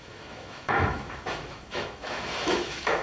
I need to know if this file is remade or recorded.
remade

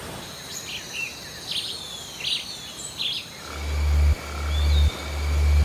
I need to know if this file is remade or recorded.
recorded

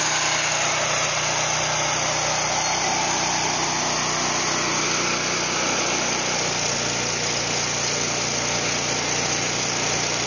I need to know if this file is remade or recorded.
recorded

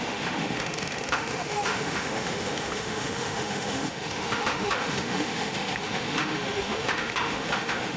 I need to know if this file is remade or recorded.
remade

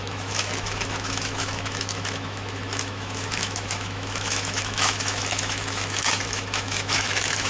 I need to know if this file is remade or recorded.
remade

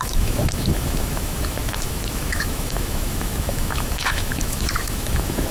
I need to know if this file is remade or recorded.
remade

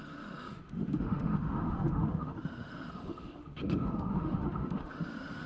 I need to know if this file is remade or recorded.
remade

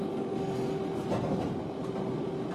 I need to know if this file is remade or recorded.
recorded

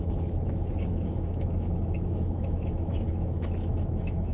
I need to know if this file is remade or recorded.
remade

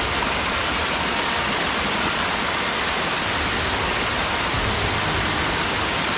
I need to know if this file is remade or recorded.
recorded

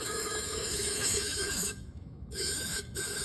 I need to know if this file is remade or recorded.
remade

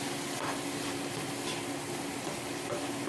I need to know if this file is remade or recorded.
recorded